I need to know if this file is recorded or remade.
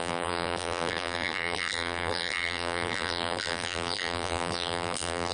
remade